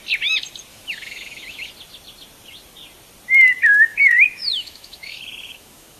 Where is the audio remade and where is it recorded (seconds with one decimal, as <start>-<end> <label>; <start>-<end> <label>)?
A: 0.0-0.7 recorded; 0.7-1.7 remade; 1.7-3.7 recorded; 3.7-6.0 remade